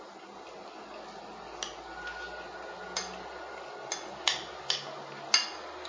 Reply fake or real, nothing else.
real